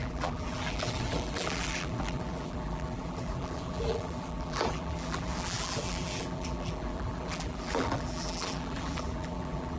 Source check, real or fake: fake